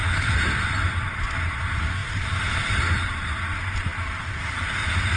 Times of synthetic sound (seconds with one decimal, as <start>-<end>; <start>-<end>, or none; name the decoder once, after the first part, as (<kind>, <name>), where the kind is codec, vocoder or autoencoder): 2.0-2.9 (vocoder, BigVGAN v2)